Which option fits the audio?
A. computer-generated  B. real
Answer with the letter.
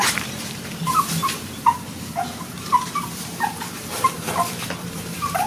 A